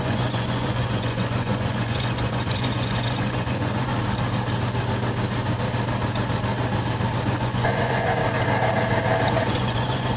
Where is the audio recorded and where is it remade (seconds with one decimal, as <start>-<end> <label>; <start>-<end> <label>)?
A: 0.0-3.9 remade; 3.9-7.2 recorded; 7.2-8.2 remade; 8.2-9.3 recorded; 9.3-10.2 remade